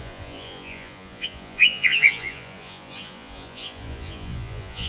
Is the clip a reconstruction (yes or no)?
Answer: yes